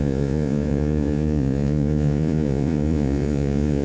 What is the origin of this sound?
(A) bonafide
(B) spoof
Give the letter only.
B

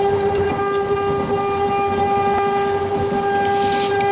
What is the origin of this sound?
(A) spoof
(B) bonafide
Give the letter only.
B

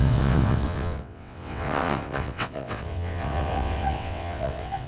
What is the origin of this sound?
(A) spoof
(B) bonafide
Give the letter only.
A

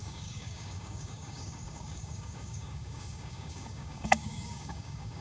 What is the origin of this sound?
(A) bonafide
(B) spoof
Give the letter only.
B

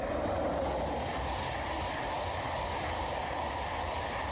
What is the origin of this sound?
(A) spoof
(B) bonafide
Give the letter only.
B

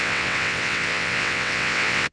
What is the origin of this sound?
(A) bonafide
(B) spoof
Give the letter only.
B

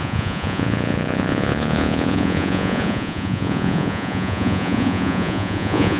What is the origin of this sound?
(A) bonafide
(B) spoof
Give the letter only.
B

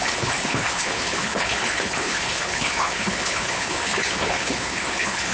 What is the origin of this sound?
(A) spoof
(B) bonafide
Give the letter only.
A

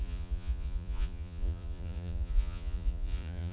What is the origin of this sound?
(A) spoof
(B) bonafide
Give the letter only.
A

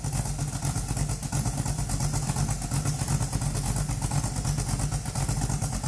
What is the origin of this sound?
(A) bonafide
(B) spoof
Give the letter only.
A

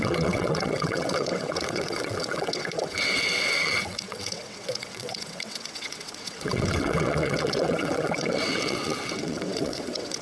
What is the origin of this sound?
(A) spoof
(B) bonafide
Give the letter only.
A